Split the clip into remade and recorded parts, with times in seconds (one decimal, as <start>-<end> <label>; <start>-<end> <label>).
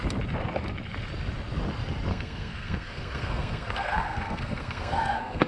0.0-2.1 recorded; 2.1-5.5 remade